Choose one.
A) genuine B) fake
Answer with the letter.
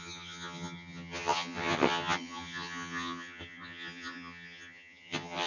B